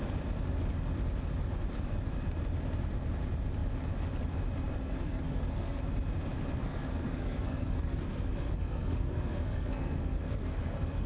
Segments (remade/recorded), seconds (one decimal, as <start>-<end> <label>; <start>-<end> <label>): 0.0-4.8 recorded; 4.8-5.8 remade; 5.8-6.6 recorded; 6.6-11.1 remade